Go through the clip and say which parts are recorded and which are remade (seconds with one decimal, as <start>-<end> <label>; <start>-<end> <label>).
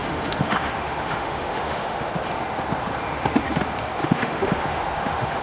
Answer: 0.0-2.1 remade; 2.1-4.0 recorded; 4.0-5.4 remade